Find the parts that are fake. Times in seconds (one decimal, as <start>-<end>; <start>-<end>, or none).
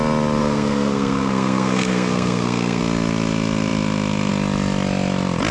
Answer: 0.4-2.8